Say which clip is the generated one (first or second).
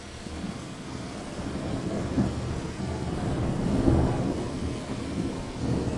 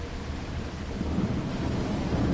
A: first